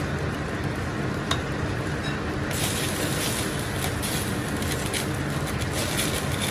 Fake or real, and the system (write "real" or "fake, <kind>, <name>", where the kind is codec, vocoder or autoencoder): real